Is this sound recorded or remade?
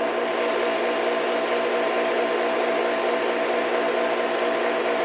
recorded